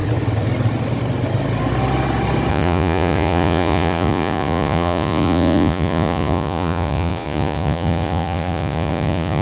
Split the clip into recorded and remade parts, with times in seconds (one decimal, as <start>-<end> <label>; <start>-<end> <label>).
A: 0.0-2.5 recorded; 2.5-9.4 remade